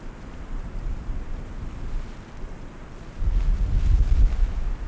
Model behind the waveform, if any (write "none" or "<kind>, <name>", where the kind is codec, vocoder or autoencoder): none